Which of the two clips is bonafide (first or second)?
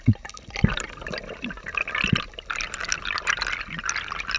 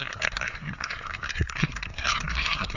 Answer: first